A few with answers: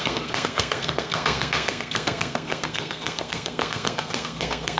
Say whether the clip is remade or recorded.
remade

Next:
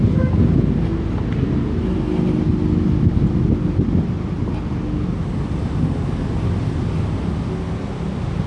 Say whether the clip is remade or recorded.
recorded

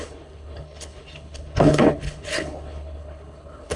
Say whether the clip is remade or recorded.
remade